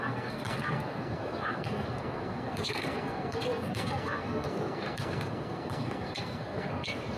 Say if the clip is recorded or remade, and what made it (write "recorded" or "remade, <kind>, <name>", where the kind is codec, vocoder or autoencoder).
remade, codec, SNAC